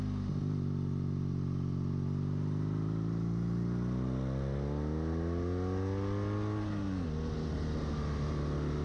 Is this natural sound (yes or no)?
yes